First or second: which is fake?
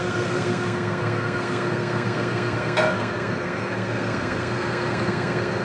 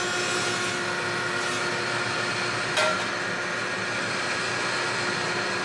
first